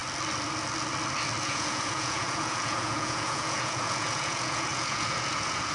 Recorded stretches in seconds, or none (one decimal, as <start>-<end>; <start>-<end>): 0.0-1.4